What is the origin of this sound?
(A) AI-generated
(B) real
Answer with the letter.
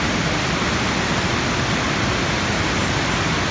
B